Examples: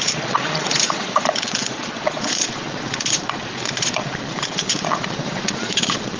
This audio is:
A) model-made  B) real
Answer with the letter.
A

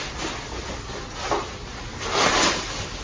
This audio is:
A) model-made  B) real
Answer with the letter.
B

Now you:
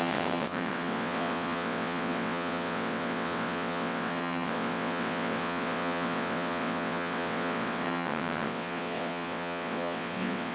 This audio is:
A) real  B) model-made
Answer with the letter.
B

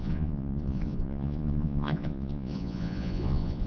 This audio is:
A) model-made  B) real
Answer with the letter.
A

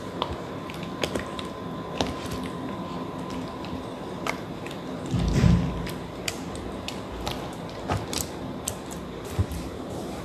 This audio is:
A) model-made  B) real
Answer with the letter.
A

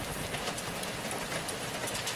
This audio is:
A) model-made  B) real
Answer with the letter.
B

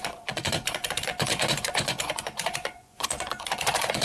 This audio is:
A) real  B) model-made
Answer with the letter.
B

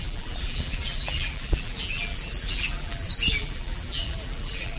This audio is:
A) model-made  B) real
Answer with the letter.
A